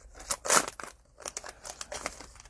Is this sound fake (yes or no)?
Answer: no